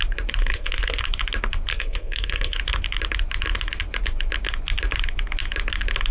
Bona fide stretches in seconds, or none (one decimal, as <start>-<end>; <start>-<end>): 0.0-0.4; 1.0-1.7; 2.6-6.1